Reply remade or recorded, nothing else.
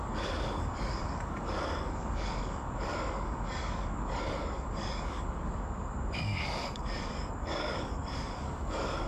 remade